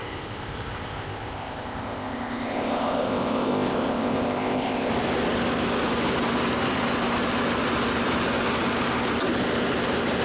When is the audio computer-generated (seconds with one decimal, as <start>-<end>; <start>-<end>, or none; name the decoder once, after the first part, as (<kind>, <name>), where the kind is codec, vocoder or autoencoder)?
0.0-4.9 (codec, ZipCodec)